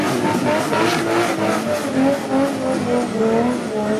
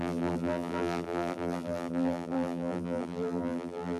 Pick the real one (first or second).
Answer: first